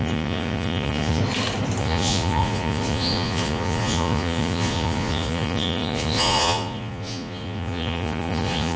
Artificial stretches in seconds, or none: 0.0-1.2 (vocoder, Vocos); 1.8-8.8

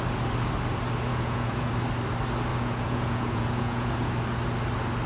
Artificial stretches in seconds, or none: 1.1-1.7 (vocoder, Vocos); 2.5-4.1

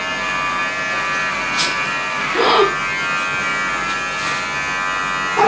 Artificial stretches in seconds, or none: none

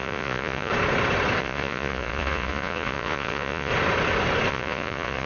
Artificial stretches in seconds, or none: 0.0-0.7 (vocoder, Vocos); 1.4-3.7; 4.5-5.3